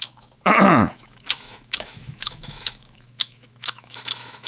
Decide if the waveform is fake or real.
fake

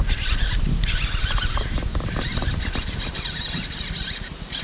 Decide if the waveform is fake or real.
real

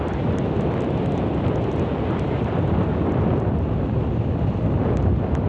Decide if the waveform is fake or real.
real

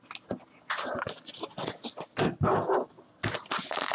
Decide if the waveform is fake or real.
real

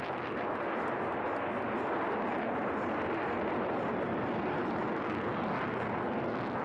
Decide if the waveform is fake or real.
real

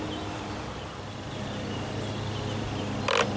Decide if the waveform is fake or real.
real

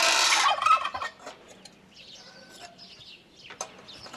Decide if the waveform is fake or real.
real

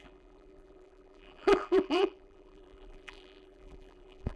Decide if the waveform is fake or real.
fake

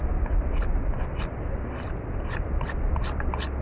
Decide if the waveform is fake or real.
real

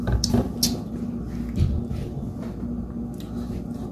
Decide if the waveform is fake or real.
real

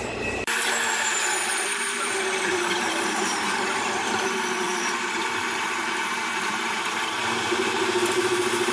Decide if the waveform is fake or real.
fake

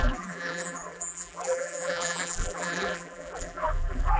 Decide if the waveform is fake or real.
fake